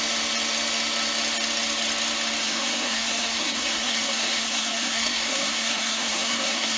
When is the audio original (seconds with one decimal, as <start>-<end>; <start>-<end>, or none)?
0.0-2.4